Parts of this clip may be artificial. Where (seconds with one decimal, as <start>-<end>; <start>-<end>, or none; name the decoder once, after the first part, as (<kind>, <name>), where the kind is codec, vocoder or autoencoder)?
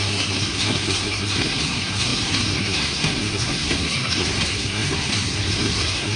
0.0-6.2 (codec, SNAC)